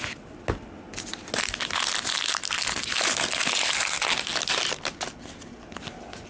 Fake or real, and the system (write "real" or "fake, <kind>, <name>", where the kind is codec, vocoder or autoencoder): real